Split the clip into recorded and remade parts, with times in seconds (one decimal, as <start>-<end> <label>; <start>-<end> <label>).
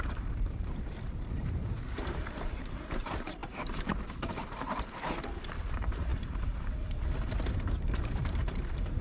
0.0-9.0 remade